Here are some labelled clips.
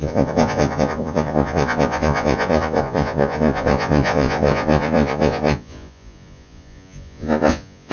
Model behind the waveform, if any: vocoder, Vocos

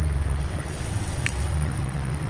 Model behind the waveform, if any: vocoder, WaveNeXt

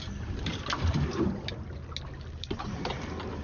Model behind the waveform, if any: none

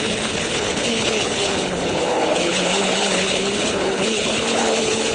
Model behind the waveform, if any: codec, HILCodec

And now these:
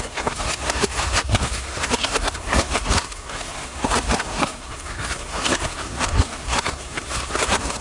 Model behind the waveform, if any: codec, SNAC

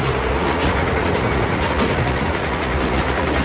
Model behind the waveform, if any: vocoder, Vocos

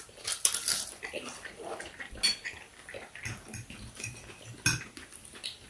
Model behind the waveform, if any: none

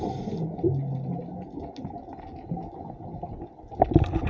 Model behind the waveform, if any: none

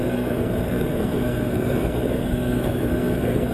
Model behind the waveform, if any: codec, SNAC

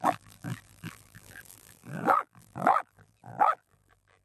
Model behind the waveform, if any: vocoder, BigVGAN v2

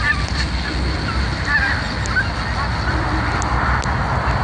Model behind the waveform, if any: none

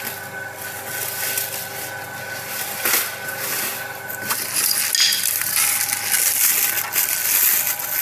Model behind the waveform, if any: none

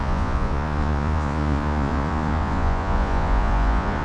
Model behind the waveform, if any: vocoder, Vocos